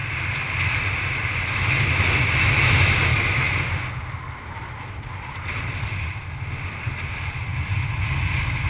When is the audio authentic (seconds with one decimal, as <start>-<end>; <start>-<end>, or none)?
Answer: 0.0-3.1; 3.6-8.7